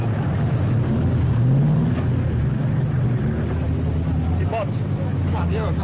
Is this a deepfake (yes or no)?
no